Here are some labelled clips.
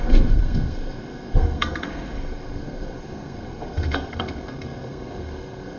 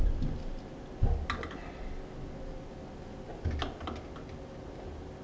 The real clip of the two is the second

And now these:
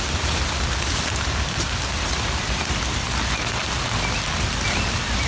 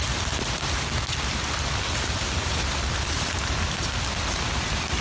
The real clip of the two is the first